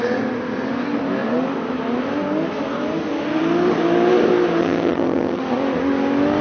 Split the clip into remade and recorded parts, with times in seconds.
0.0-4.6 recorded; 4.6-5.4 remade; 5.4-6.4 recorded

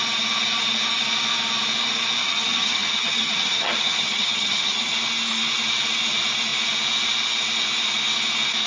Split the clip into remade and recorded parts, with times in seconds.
0.0-2.2 recorded; 2.2-4.9 remade; 4.9-8.7 recorded